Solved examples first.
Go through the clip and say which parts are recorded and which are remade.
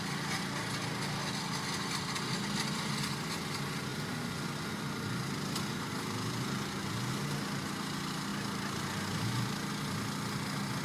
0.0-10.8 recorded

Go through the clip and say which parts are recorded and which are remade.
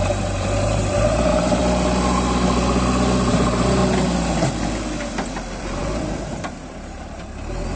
0.0-1.6 remade; 1.6-3.3 recorded; 3.3-3.8 remade; 3.8-5.1 recorded; 5.1-7.8 remade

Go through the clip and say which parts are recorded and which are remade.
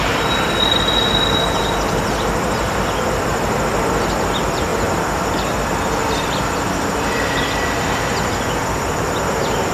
0.0-4.7 recorded; 4.7-5.3 remade; 5.3-6.0 recorded; 6.0-7.3 remade; 7.3-8.6 recorded; 8.6-9.7 remade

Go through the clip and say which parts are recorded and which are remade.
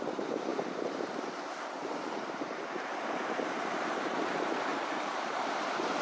0.0-0.5 recorded; 0.5-4.1 remade; 4.1-4.7 recorded; 4.7-5.6 remade; 5.6-6.0 recorded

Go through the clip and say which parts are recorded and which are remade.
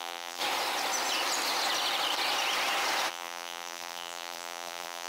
0.0-0.4 remade; 0.4-3.1 recorded; 3.1-5.1 remade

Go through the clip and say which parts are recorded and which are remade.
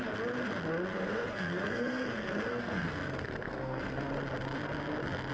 0.0-0.9 recorded; 0.9-4.1 remade; 4.1-5.3 recorded